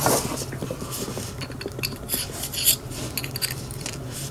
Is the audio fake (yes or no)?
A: no